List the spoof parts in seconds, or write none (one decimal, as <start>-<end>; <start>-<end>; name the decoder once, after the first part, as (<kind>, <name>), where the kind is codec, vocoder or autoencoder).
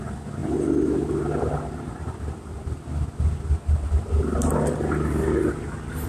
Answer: none